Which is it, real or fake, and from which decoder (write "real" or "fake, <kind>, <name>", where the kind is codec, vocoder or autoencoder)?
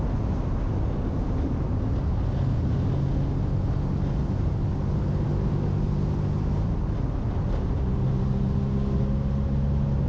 real